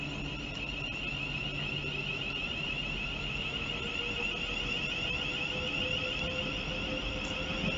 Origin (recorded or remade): recorded